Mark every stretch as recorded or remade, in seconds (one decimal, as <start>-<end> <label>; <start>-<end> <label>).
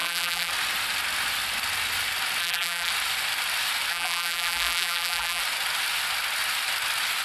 0.0-0.5 remade; 0.5-2.4 recorded; 2.4-2.9 remade; 2.9-3.9 recorded; 3.9-5.4 remade; 5.4-7.2 recorded